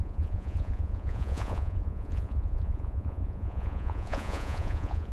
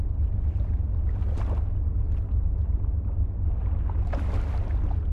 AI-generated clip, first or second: first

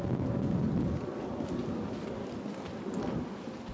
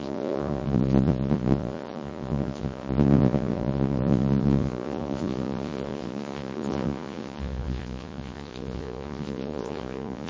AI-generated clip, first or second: second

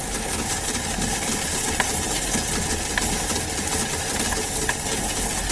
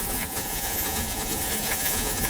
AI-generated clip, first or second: second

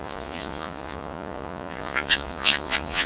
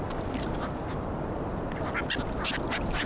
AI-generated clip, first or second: first